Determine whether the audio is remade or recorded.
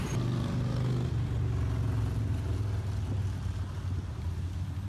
recorded